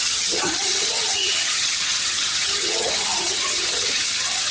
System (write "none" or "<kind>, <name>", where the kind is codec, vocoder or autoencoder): vocoder, HiFi-GAN